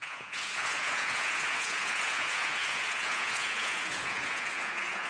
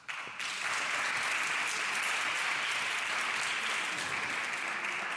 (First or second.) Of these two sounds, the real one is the second